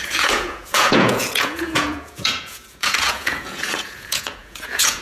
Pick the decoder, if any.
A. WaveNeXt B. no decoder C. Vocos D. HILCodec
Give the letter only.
C